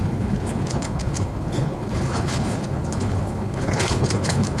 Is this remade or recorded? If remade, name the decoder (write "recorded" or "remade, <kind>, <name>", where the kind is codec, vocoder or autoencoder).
remade, codec, HILCodec